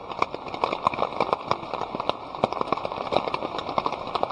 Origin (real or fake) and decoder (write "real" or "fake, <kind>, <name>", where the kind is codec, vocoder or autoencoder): real